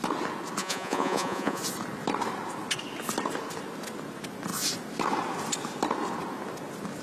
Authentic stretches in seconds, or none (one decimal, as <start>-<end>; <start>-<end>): 0.0-0.6; 1.6-7.0